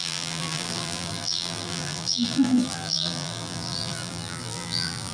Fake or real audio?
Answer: fake